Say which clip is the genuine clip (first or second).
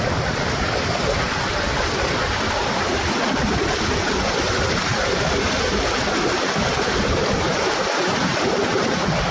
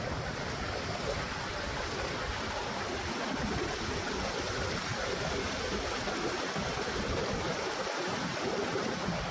second